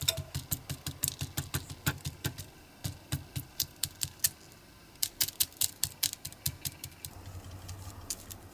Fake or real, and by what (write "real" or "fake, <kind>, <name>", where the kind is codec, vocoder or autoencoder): real